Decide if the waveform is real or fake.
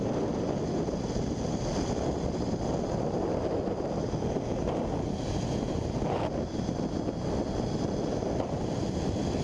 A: real